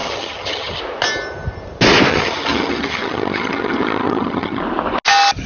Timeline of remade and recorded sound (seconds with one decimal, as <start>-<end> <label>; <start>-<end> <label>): 0.0-0.8 remade; 0.8-2.1 recorded; 2.1-4.6 remade; 4.6-5.5 recorded